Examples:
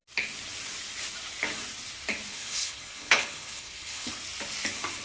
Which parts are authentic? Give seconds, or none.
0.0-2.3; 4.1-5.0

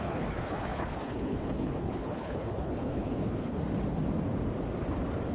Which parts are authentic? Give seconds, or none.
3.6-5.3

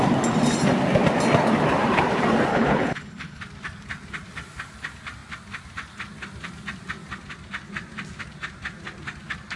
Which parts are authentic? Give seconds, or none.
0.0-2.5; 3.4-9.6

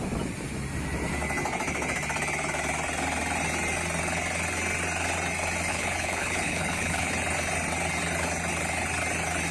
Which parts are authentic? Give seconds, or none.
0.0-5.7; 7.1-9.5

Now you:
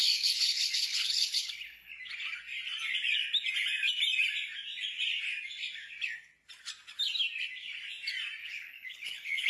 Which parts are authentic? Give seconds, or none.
1.9-8.4

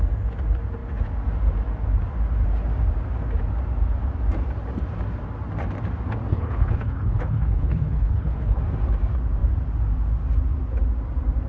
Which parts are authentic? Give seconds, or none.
0.0-6.3; 8.6-11.5